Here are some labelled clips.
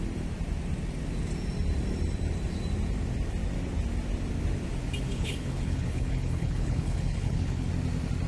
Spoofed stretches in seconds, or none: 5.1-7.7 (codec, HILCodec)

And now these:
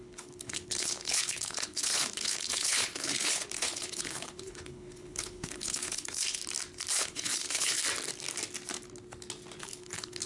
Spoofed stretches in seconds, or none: 0.0-6.4 (codec, HILCodec); 6.9-7.8; 9.6-10.3

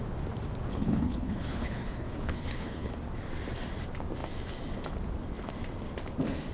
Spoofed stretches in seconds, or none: 0.7-2.9 (codec, HILCodec)

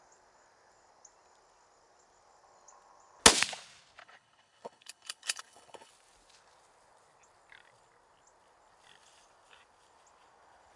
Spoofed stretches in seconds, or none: 4.0-5.9 (codec, HILCodec)